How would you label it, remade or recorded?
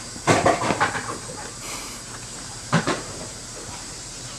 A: remade